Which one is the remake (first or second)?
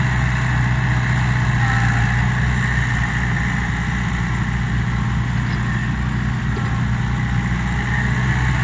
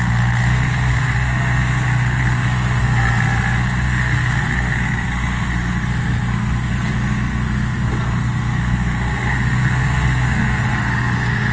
second